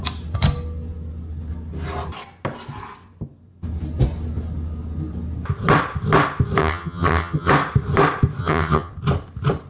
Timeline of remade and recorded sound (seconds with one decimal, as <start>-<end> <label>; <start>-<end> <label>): 0.0-6.6 recorded; 6.6-7.5 remade; 7.5-8.4 recorded; 8.4-8.9 remade; 8.9-9.7 recorded